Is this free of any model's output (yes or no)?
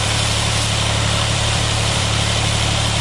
no